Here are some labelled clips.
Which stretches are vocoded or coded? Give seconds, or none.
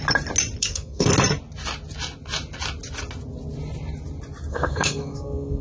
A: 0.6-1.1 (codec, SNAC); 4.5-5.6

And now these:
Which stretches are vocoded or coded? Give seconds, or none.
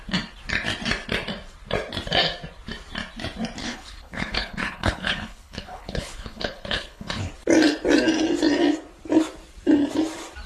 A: 3.6-7.3 (codec, HILCodec)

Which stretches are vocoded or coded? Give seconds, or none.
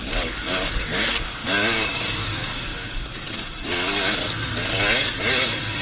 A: 0.0-2.7 (codec, DAC)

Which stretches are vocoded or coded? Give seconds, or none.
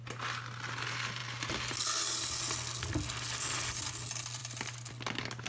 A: none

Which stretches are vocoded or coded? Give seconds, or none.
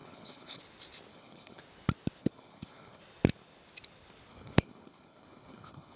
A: 0.0-0.6 (codec, HILCodec); 1.1-1.6; 2.2-3.0; 4.3-6.0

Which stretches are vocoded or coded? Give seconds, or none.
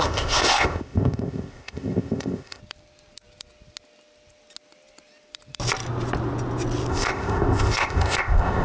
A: 0.0-2.6 (codec, ZipCodec); 6.9-8.6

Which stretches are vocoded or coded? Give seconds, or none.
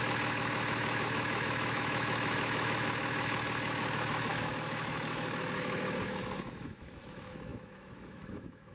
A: 0.0-8.7 (autoencoder, DAC-VAE)